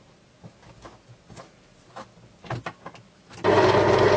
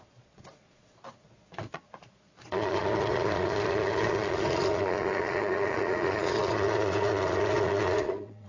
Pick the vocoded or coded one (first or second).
second